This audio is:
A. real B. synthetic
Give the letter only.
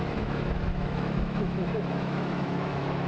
B